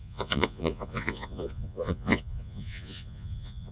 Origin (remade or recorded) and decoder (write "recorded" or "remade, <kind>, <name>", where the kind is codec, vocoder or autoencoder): remade, vocoder, Vocos